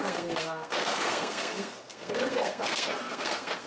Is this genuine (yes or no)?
no